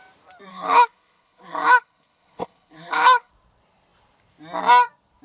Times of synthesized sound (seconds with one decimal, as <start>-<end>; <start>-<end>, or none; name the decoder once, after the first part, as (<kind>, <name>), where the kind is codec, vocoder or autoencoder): 0.5-3.3 (codec, HILCodec)